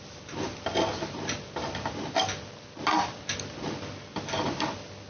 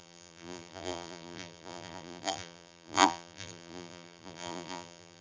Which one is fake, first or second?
second